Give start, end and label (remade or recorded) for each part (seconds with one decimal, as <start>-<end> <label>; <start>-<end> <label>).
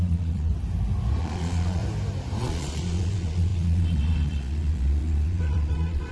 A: 0.0-0.5 remade; 0.5-1.2 recorded; 1.2-1.8 remade; 1.8-2.4 recorded; 2.4-6.1 remade